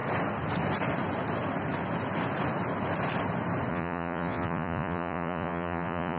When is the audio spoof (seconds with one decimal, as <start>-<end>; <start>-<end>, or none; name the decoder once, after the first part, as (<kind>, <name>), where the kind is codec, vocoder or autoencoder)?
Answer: 3.7-6.2 (vocoder, Vocos)